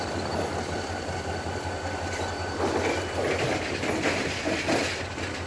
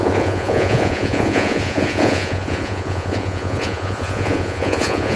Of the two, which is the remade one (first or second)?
second